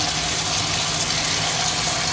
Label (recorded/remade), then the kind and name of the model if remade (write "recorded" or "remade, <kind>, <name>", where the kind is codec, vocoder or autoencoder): recorded